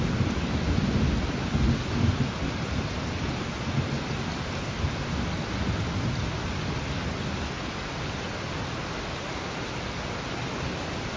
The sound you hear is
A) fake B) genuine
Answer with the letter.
B